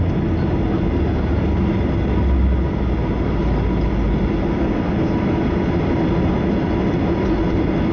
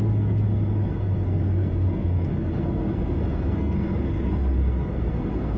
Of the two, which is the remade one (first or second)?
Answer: second